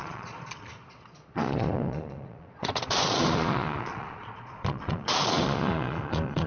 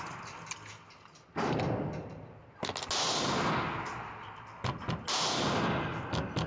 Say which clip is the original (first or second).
second